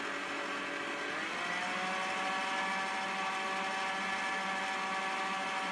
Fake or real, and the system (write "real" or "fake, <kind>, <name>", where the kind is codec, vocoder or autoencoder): real